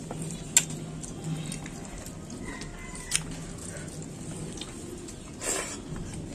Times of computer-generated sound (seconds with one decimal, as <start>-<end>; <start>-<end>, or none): none